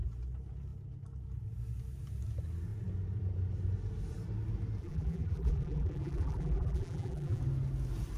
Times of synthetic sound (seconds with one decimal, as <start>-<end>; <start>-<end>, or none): 4.8-7.4